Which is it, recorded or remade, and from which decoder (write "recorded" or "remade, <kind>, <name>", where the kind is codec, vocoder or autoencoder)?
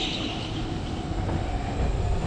recorded